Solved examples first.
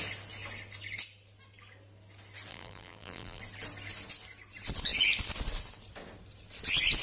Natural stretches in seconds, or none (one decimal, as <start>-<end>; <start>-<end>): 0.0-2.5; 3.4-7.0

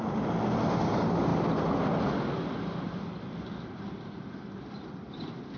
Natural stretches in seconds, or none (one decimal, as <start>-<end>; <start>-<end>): 0.0-5.6

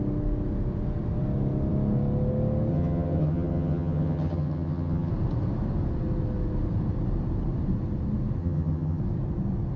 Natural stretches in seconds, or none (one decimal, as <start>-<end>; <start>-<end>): 0.0-2.7; 5.1-8.4; 9.0-9.8